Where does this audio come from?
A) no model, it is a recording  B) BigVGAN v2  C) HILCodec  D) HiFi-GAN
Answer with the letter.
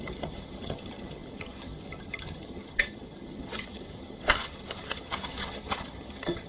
D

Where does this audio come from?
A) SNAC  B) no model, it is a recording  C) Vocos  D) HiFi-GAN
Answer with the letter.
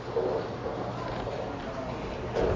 B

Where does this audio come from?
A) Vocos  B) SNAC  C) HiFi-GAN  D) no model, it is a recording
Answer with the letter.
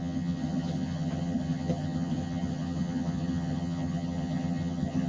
C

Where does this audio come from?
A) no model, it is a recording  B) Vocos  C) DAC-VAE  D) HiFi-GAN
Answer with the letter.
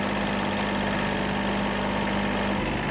A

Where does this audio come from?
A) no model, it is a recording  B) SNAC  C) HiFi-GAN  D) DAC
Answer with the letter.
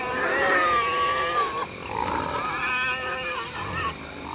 A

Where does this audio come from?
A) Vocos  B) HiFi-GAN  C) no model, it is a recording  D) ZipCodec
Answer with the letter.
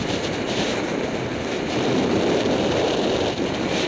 C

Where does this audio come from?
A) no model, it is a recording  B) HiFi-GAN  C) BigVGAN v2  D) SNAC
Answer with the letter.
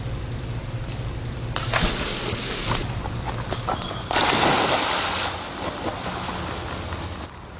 A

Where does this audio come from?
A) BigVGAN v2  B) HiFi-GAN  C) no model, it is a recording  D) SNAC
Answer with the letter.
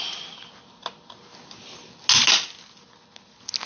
C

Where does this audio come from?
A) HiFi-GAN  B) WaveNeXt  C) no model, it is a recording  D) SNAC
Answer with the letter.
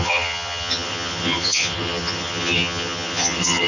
A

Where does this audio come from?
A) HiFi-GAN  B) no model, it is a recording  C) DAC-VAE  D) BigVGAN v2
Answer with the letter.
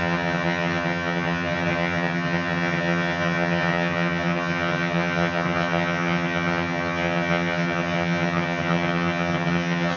A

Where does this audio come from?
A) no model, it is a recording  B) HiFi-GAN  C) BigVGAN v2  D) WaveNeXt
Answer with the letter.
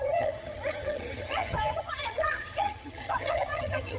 B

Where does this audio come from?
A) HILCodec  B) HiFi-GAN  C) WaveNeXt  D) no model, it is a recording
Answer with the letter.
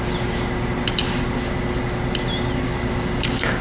D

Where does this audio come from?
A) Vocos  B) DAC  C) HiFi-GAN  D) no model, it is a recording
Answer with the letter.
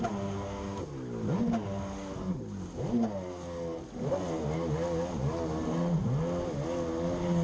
D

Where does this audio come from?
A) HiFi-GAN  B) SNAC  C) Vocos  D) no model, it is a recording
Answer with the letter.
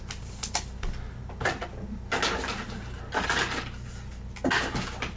D